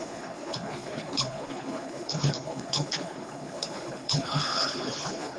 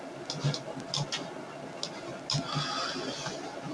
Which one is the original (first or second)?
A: second